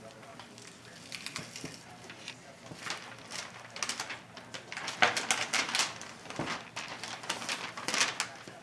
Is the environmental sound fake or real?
real